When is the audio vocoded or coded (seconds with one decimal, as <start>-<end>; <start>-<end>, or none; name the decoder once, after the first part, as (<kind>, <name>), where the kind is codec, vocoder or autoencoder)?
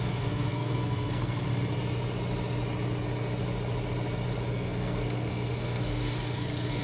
0.0-1.5 (codec, SNAC); 4.5-6.8